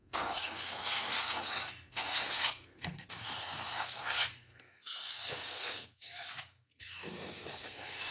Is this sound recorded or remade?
remade